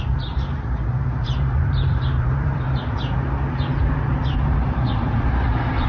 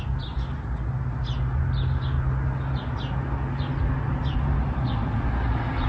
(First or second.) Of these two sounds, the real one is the second